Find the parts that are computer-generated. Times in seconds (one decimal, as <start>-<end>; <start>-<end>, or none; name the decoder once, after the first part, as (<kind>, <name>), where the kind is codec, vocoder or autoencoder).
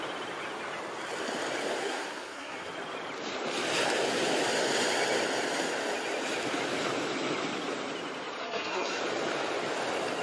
1.8-2.7 (codec, SNAC); 8.4-9.0